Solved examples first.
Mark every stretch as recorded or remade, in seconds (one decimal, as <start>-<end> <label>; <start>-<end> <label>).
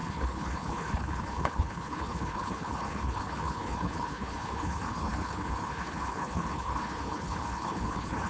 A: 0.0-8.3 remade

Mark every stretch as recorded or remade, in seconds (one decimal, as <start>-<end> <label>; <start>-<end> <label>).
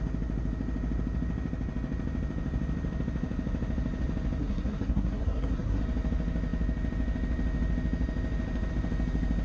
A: 0.0-4.4 recorded; 4.4-5.8 remade; 5.8-9.4 recorded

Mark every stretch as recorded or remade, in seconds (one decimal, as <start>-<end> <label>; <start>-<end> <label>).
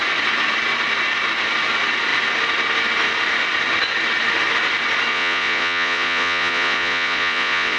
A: 0.0-5.1 recorded; 5.1-7.8 remade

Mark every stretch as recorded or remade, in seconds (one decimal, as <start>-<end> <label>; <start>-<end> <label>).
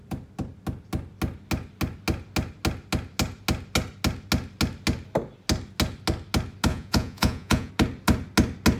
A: 0.0-6.7 recorded; 6.7-7.7 remade; 7.7-8.8 recorded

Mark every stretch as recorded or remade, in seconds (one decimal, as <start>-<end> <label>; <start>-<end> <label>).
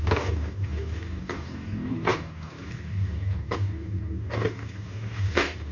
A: 0.0-5.7 remade